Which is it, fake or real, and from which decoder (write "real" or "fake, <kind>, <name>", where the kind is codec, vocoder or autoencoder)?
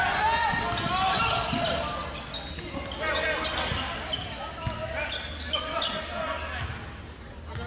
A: real